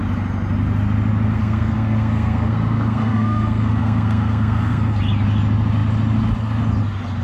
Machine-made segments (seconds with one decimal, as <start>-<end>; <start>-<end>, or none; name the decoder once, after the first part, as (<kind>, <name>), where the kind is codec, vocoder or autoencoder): 1.3-5.0 (codec, SNAC)